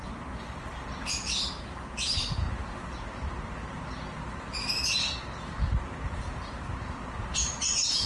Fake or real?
fake